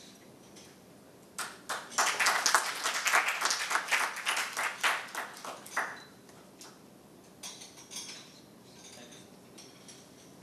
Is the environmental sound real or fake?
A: real